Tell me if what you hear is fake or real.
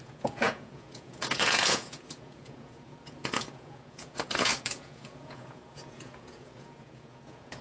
fake